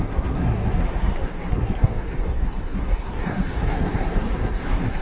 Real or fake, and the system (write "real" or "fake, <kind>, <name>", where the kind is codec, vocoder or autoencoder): fake, codec, SNAC